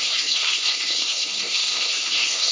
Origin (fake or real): fake